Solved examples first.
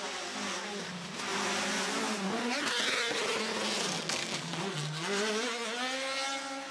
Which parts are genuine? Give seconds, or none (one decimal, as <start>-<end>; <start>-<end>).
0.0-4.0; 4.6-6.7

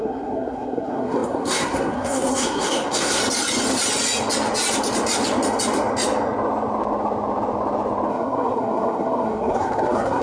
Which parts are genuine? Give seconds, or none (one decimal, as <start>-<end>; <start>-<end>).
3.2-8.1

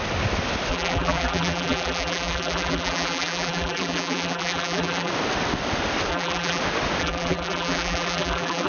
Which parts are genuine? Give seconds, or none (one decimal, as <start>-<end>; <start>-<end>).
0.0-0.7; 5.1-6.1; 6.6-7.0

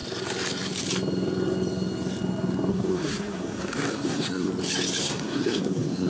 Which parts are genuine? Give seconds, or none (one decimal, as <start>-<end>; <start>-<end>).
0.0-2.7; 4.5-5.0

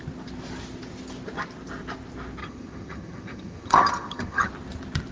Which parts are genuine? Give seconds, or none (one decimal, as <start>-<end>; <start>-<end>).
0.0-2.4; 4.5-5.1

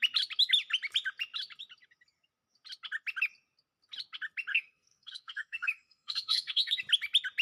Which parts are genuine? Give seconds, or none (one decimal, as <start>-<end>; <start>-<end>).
0.0-4.5; 6.8-7.4

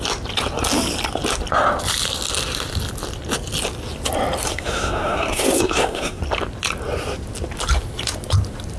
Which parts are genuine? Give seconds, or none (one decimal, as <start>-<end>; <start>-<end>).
0.0-4.5; 6.2-8.8